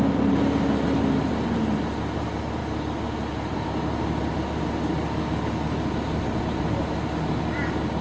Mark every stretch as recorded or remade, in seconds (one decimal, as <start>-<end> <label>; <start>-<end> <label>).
0.0-8.0 recorded